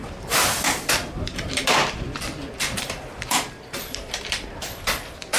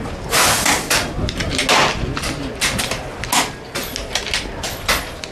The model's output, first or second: first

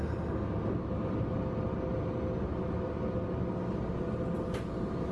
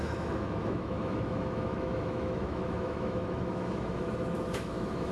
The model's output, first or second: second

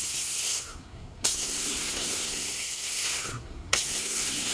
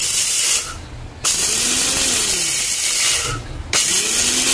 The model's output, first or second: first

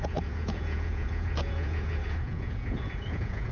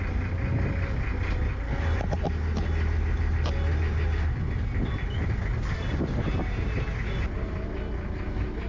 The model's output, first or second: first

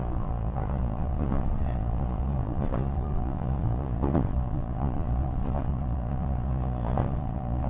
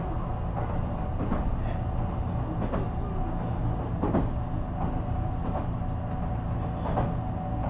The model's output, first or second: first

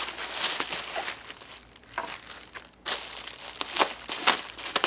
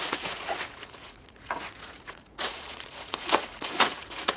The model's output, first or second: second